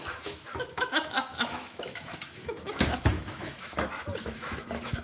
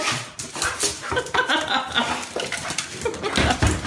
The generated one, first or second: first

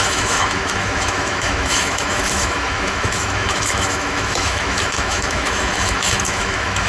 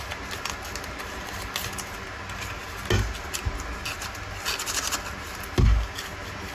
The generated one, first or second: first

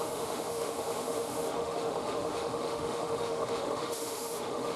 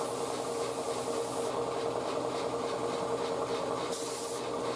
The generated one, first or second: first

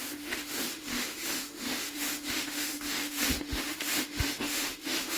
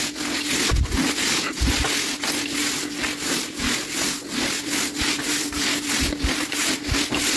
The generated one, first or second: first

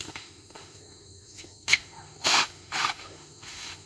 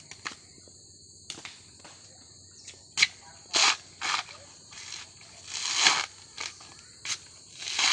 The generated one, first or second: first